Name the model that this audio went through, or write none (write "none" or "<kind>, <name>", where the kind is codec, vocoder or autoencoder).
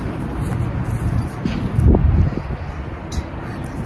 none